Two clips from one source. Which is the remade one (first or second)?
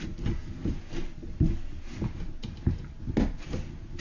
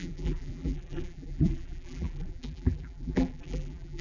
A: second